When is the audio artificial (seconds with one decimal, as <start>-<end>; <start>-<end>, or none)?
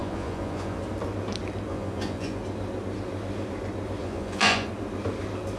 0.0-0.8; 1.7-2.4; 4.0-4.7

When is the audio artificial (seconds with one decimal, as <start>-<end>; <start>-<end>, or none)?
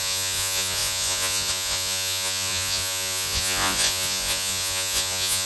0.0-5.5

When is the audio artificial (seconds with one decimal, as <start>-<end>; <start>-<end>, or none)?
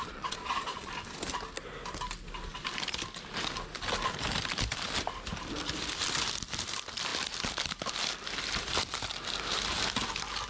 0.0-0.9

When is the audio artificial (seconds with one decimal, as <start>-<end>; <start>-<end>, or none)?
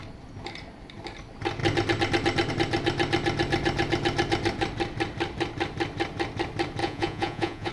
6.8-7.7